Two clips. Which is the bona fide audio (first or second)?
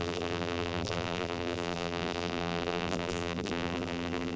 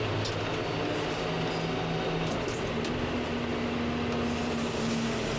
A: second